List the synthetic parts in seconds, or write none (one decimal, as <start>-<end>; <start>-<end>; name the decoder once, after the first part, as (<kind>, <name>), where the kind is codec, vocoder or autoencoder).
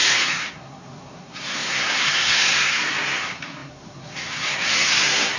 0.0-5.4 (codec, SNAC)